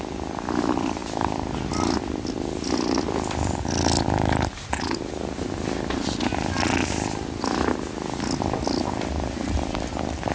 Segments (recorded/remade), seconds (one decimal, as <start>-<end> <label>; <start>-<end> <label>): 0.0-10.3 recorded

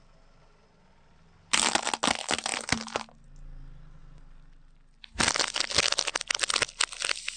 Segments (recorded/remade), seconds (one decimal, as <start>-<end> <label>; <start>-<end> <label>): 0.0-7.4 recorded